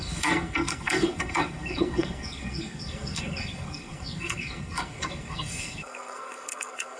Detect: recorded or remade remade